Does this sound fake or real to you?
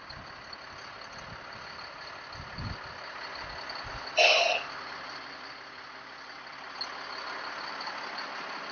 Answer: real